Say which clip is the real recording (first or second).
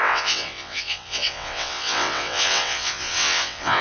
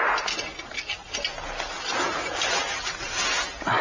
second